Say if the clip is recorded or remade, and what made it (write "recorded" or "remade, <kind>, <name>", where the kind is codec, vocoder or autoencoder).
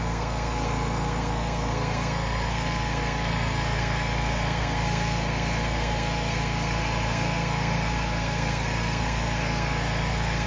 remade, codec, SNAC